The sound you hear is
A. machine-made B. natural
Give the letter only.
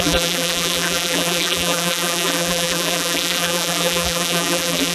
A